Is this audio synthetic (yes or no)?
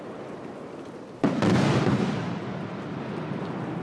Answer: yes